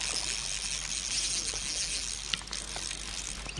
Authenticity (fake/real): real